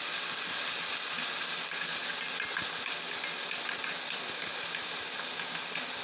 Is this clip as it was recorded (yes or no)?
yes